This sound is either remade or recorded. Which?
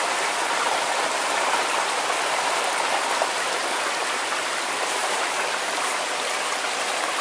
recorded